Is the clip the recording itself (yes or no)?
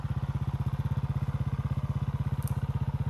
yes